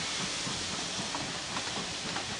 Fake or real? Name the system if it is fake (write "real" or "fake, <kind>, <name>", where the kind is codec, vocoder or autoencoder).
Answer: real